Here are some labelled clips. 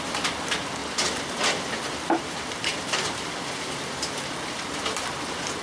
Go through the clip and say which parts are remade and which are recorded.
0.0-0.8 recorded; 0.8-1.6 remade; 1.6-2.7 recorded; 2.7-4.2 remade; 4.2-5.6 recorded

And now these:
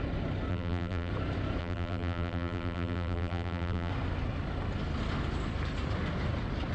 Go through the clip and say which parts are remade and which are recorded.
0.0-0.5 recorded; 0.5-1.1 remade; 1.1-1.6 recorded; 1.6-3.9 remade; 3.9-6.7 recorded

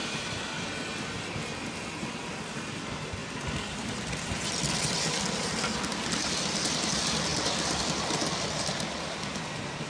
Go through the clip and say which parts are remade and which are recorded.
0.0-9.9 recorded

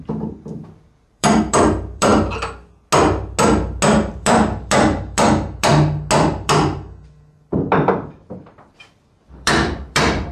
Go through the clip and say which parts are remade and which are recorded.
0.0-2.1 remade; 2.1-4.1 recorded; 4.1-5.7 remade; 5.7-6.3 recorded; 6.3-10.3 remade

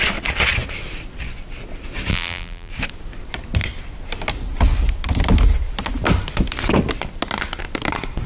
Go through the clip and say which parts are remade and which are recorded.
0.0-2.1 recorded; 2.1-2.7 remade; 2.7-8.3 recorded

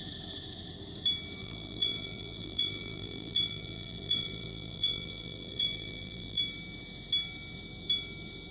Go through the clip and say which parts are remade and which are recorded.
0.0-1.4 recorded; 1.4-6.4 remade; 6.4-8.5 recorded